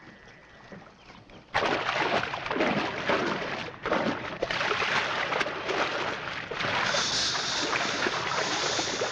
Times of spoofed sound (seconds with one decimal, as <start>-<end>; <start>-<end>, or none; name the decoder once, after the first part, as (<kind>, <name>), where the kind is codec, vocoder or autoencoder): none